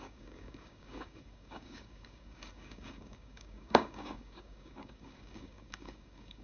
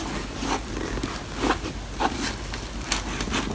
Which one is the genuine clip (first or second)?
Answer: second